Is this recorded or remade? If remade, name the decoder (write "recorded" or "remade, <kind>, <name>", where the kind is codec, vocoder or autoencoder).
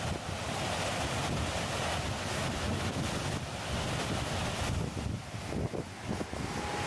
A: recorded